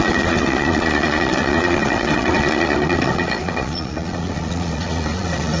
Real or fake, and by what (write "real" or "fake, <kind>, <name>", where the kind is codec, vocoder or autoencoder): fake, vocoder, Vocos